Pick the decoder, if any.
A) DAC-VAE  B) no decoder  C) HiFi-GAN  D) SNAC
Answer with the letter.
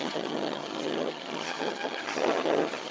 C